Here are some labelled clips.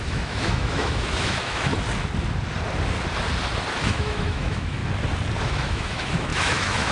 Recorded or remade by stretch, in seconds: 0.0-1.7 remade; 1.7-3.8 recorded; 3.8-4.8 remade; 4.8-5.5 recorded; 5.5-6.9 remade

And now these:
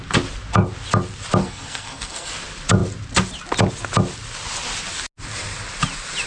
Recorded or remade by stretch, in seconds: 0.0-1.4 recorded; 1.4-2.3 remade; 2.3-6.3 recorded

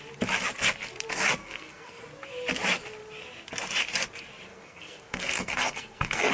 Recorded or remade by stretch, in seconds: 0.0-1.4 recorded; 1.4-2.0 remade; 2.0-4.5 recorded; 4.5-6.3 remade

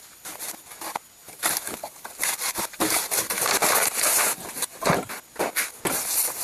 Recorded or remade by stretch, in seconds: 0.0-1.2 recorded; 1.2-5.0 remade; 5.0-6.4 recorded

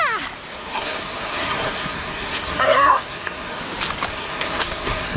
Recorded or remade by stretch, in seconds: 0.0-0.5 recorded; 0.5-3.6 remade; 3.6-4.1 recorded; 4.1-5.2 remade

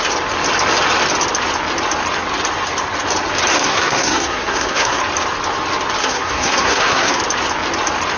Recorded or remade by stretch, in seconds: 0.0-3.5 recorded; 3.5-5.0 remade; 5.0-6.0 recorded; 6.0-7.2 remade; 7.2-8.2 recorded